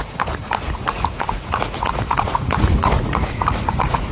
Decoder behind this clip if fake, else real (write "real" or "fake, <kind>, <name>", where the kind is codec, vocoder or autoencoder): fake, vocoder, Vocos